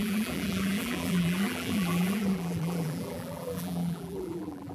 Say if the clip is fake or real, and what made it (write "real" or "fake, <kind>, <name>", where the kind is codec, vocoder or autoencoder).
fake, vocoder, BigVGAN v2